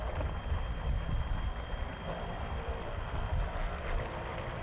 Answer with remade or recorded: recorded